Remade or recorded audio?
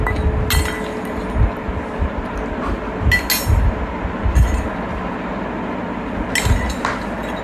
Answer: recorded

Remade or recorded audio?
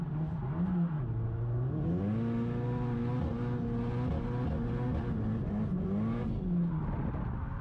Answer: recorded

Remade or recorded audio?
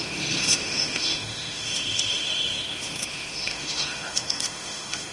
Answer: remade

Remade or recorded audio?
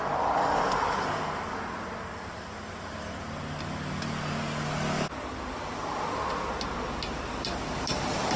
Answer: recorded